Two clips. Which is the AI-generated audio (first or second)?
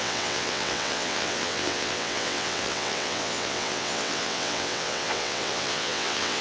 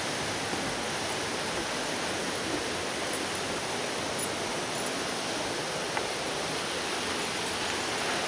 first